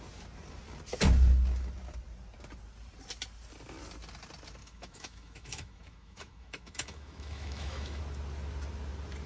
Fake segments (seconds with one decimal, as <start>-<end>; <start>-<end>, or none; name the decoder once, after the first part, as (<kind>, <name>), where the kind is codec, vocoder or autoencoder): 4.6-8.0 (autoencoder, DAC-VAE)